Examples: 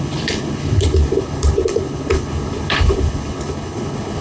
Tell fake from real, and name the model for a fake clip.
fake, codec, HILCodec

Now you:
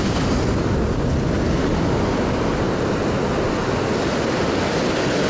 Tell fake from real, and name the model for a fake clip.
real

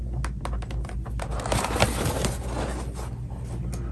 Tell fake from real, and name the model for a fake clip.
real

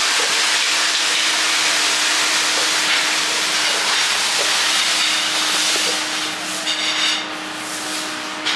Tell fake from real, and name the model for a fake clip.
real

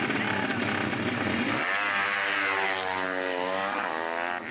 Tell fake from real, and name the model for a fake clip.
real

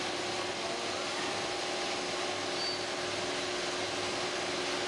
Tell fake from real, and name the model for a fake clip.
real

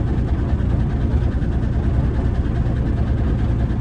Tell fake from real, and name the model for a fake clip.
real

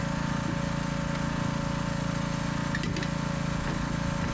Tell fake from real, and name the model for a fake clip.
real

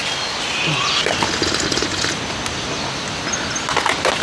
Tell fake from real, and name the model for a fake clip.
real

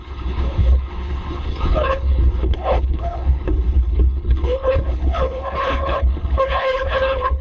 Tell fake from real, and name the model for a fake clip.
fake, codec, HILCodec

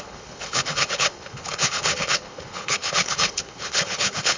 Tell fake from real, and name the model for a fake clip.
fake, codec, HILCodec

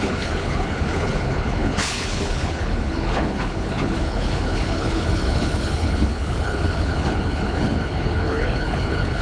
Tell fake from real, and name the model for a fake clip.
fake, codec, HILCodec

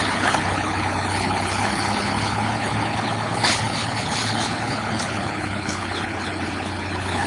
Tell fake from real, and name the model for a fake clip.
fake, codec, HILCodec